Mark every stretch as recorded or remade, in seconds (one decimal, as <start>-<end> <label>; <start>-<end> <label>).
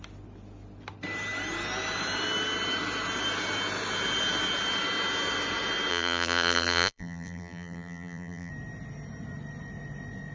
0.0-5.9 recorded; 5.9-8.5 remade; 8.5-10.3 recorded